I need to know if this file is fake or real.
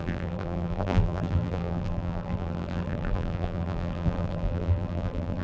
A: fake